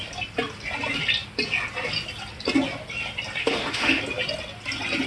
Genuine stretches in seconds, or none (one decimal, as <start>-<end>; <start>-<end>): 0.0-3.4; 4.0-5.1